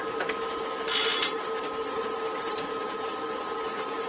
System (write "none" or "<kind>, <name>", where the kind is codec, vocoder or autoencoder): none